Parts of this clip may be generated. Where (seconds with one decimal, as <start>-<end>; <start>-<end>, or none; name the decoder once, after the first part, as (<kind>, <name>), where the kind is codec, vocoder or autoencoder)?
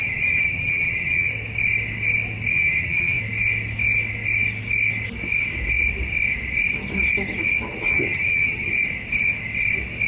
0.0-1.3 (vocoder, HiFi-GAN); 2.5-3.2; 7.9-8.7